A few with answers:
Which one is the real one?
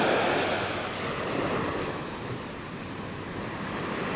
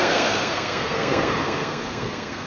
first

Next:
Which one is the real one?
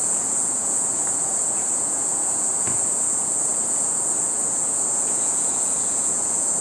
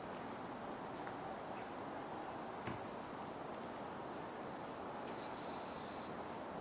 second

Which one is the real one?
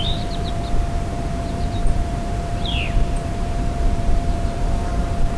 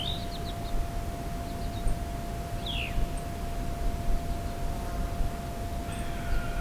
second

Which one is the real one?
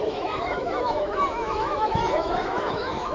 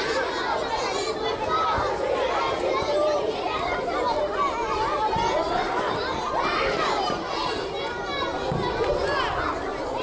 second